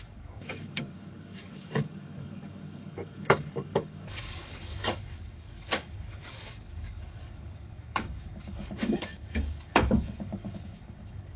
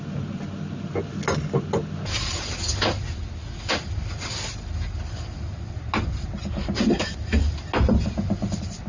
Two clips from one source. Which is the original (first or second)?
second